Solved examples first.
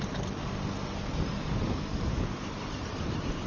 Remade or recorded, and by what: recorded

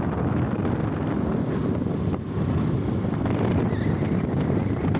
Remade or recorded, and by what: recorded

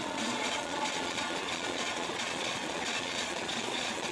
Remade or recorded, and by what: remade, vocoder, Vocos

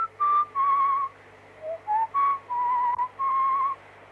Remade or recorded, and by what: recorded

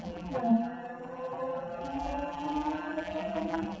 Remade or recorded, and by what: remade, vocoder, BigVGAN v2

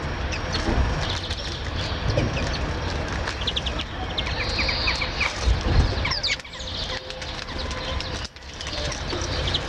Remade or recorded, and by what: recorded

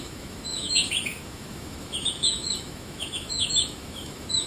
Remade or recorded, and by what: remade, autoencoder, DAC-VAE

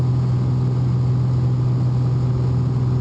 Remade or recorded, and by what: recorded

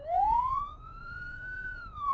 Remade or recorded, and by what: remade, vocoder, Vocos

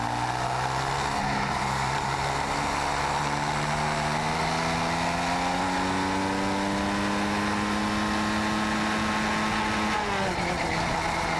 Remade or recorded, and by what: recorded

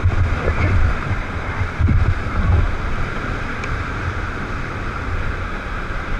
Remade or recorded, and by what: recorded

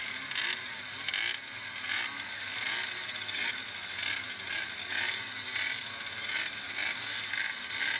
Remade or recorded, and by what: recorded